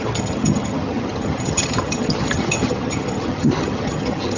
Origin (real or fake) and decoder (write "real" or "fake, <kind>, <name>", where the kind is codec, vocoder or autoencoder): fake, vocoder, HiFi-GAN